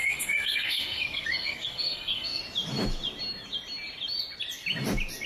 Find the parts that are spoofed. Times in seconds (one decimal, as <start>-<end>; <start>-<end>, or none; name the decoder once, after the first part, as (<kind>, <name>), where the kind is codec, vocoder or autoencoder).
0.0-2.4 (codec, SNAC)